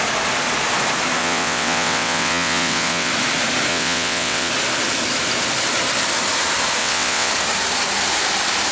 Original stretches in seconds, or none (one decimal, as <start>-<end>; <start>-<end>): 0.0-1.2; 3.1-3.7; 4.5-6.8; 7.3-8.7